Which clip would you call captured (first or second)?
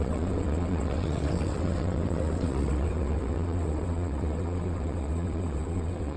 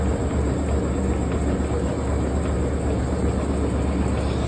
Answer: second